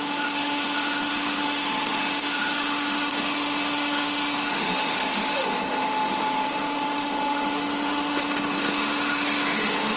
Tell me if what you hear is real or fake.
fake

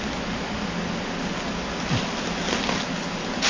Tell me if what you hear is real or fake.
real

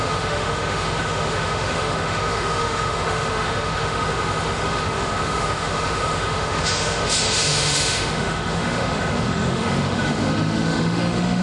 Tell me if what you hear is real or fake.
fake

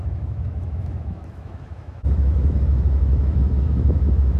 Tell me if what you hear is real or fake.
fake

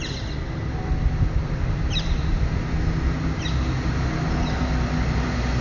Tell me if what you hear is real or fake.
real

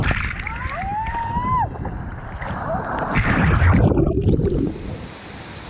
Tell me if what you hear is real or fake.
real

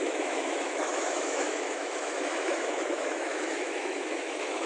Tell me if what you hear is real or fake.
fake